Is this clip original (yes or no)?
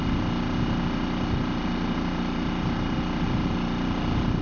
yes